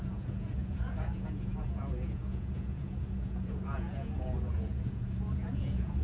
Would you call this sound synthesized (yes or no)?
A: yes